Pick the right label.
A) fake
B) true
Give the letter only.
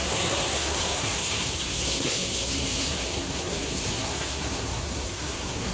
A